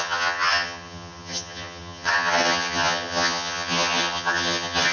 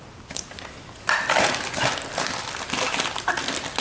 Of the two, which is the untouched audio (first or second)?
second